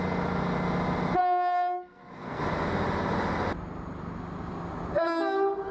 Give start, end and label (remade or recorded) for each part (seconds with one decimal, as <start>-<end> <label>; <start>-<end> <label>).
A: 0.0-1.2 recorded; 1.2-2.4 remade; 2.4-5.7 recorded